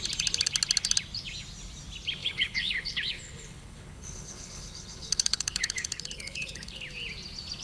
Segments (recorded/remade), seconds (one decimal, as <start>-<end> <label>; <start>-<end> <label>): 0.0-2.2 recorded; 2.2-6.8 remade; 6.8-7.6 recorded